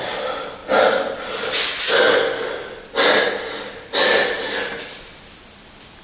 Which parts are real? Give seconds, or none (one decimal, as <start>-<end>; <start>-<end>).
0.0-6.0